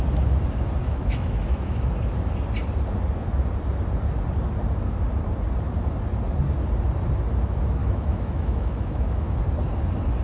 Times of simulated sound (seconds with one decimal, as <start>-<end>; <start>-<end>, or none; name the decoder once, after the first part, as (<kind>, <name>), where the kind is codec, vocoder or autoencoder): 0.8-1.9 (autoencoder, DAC-VAE); 7.8-9.4